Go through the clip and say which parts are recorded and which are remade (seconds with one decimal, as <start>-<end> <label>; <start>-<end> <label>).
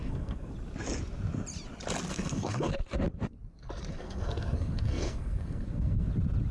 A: 0.0-0.5 remade; 0.5-2.1 recorded; 2.1-2.7 remade; 2.7-3.9 recorded; 3.9-6.1 remade; 6.1-6.5 recorded